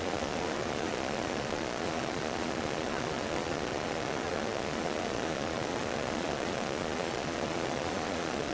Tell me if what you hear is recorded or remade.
remade